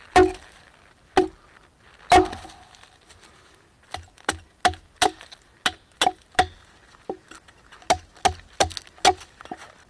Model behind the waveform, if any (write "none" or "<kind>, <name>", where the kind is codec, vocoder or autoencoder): none